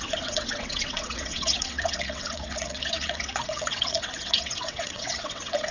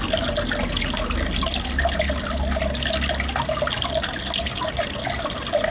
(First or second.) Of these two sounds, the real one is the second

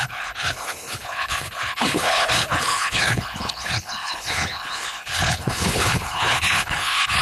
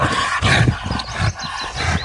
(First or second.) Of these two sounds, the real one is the second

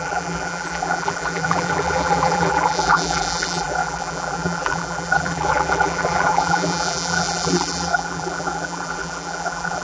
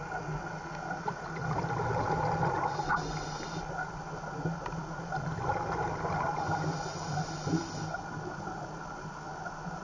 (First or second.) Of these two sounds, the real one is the second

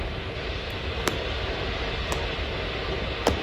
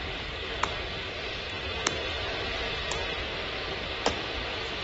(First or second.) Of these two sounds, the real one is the first